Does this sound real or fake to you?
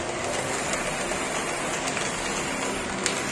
real